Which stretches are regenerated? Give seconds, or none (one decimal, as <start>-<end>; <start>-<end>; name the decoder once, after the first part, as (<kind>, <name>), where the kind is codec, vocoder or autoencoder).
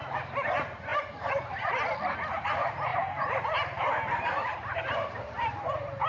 0.9-1.7 (vocoder, BigVGAN v2); 2.9-6.1